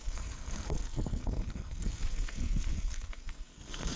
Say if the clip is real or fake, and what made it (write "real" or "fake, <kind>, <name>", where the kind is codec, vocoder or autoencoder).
fake, codec, SNAC